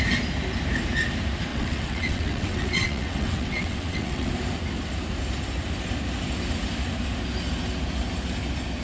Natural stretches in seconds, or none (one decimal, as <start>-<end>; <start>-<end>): 0.0-1.5; 4.3-8.8